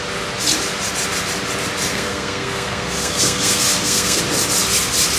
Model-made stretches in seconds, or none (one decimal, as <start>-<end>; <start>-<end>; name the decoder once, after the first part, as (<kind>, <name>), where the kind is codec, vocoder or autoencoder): 1.9-4.2 (codec, SNAC)